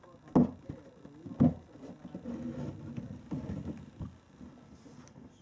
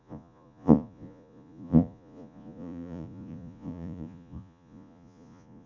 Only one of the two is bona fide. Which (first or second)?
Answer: first